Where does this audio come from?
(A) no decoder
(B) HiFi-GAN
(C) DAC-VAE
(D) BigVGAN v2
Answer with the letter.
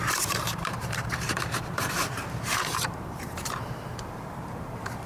D